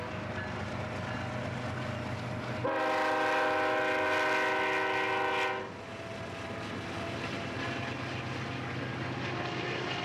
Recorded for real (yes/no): yes